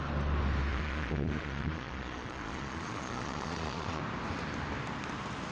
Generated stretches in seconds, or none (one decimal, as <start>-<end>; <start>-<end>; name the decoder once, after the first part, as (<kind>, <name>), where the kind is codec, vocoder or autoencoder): 0.7-4.0 (vocoder, Vocos)